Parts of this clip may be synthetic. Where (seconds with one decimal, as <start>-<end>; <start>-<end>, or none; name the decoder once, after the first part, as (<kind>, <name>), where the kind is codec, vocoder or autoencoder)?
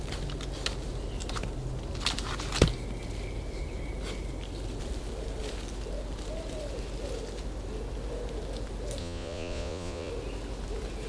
9.0-10.1 (vocoder, Vocos)